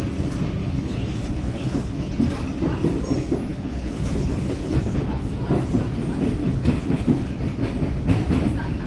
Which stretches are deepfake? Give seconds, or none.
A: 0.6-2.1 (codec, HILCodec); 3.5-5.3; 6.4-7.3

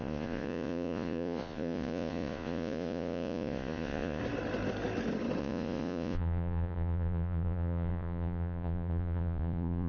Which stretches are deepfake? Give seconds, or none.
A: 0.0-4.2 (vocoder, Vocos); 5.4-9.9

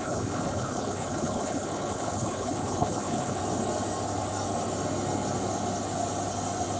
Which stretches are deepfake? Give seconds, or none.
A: 0.0-3.4 (codec, HILCodec)